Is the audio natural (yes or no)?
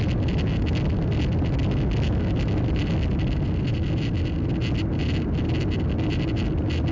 yes